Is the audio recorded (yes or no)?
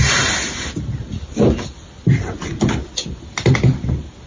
yes